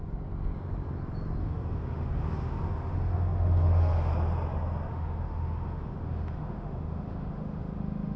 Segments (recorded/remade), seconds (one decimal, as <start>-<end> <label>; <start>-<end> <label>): 0.0-1.4 recorded; 1.4-4.1 remade; 4.1-4.9 recorded; 4.9-8.2 remade